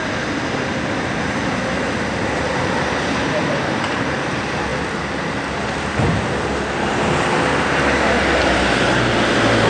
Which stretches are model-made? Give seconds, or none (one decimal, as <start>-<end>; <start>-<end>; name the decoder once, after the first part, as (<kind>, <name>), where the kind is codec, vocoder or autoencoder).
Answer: none